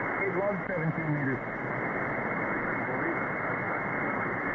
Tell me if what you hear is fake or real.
real